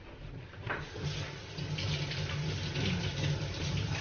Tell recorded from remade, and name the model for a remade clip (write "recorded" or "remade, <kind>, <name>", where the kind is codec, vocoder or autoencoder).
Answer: recorded